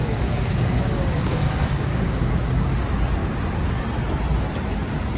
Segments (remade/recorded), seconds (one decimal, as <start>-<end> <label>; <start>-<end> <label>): 0.0-2.7 remade; 2.7-3.2 recorded; 3.2-3.8 remade; 3.8-5.2 recorded

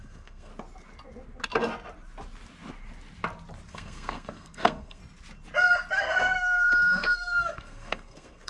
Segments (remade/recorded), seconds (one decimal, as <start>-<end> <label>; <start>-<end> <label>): 0.0-0.5 remade; 0.5-3.7 recorded; 3.7-5.0 remade; 5.0-5.9 recorded; 5.9-8.5 remade

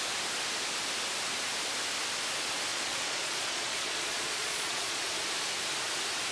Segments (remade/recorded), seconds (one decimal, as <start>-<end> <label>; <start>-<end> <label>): 0.0-2.7 recorded; 2.7-5.1 remade; 5.1-6.3 recorded